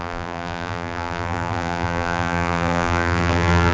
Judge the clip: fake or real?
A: fake